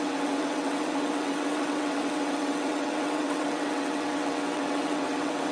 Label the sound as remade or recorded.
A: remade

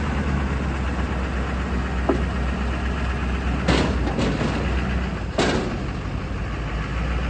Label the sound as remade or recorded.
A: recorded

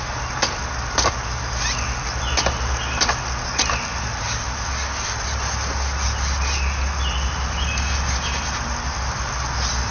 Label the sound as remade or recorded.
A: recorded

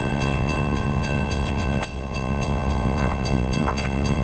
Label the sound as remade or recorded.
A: remade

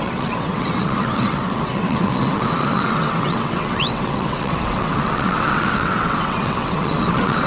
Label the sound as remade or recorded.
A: remade